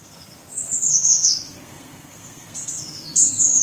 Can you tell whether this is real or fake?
fake